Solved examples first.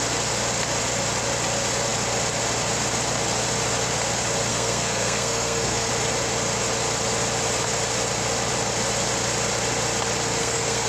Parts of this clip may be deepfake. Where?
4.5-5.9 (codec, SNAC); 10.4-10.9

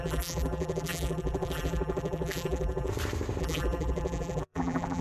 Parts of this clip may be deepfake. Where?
0.0-2.9 (vocoder, BigVGAN v2); 3.4-5.0

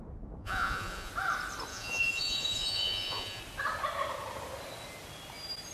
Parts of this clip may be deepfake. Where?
0.4-1.1 (vocoder, Vocos); 1.7-3.4

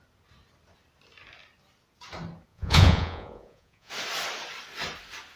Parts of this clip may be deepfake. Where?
2.5-3.9 (vocoder, Vocos)